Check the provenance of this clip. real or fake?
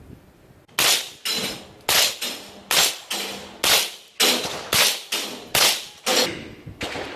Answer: real